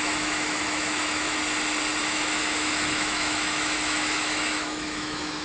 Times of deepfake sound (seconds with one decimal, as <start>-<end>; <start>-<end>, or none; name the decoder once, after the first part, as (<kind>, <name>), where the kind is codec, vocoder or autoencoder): 0.0-1.3 (autoencoder, DAC-VAE); 2.0-5.4